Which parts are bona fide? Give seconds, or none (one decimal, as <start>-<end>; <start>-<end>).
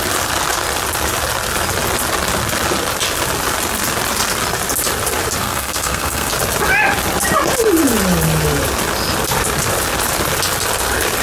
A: 0.0-5.4; 6.3-11.2